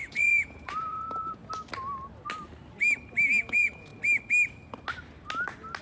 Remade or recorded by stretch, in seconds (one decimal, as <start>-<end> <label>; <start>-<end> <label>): 0.0-1.4 remade; 1.4-3.4 recorded; 3.4-3.9 remade; 3.9-5.8 recorded